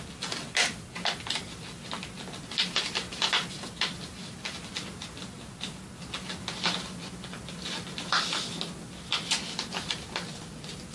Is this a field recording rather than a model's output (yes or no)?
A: yes